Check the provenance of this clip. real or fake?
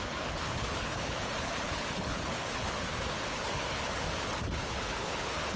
fake